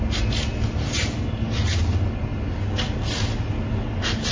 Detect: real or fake real